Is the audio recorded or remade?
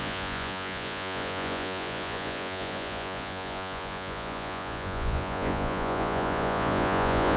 remade